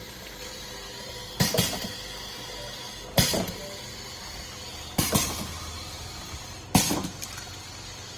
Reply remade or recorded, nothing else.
recorded